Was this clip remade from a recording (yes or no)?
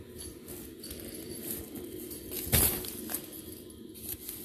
no